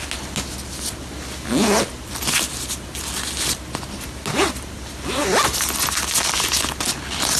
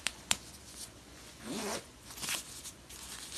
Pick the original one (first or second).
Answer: first